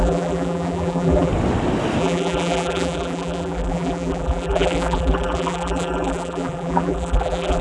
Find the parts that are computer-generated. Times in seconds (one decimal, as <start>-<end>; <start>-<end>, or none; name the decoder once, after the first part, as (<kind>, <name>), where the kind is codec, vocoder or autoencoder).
0.0-1.3 (vocoder, BigVGAN v2); 2.0-7.6